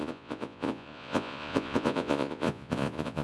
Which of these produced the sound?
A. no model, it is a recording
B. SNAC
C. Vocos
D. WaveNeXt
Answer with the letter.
C